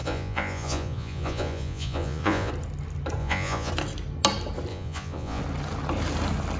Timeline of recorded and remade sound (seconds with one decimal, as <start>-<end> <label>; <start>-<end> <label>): 0.0-2.5 remade; 2.5-3.2 recorded; 3.2-3.7 remade; 3.7-4.7 recorded; 4.7-5.4 remade; 5.4-6.6 recorded